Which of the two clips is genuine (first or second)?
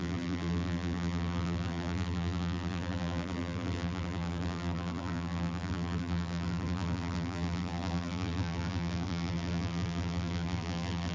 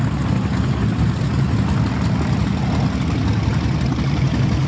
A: second